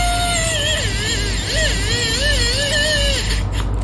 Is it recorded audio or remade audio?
recorded